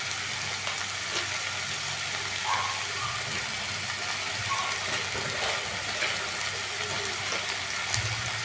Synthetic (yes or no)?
no